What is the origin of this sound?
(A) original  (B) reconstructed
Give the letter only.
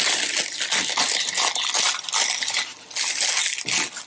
A